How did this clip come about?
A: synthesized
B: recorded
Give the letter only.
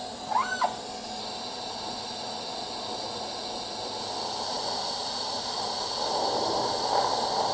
B